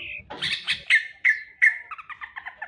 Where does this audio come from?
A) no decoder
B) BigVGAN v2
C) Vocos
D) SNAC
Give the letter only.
A